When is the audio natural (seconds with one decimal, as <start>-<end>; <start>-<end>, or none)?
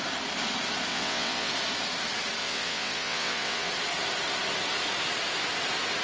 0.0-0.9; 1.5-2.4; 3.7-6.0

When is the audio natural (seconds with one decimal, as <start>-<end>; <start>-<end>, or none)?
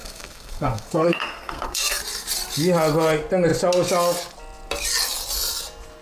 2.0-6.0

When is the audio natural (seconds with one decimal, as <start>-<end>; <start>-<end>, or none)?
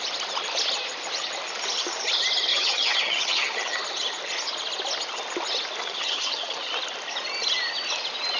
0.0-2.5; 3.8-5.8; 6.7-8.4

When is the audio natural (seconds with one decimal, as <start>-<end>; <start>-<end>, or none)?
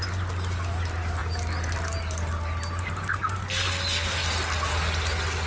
0.0-5.5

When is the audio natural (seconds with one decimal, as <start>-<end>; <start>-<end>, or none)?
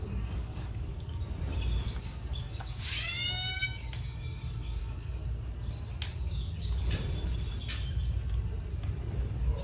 0.9-2.0; 5.2-9.6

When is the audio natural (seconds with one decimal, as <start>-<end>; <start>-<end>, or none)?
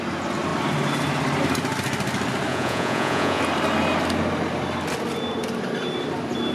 0.0-2.5; 3.4-6.5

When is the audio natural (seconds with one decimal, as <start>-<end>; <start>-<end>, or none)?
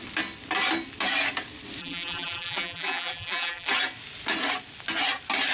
0.0-1.8; 3.7-5.5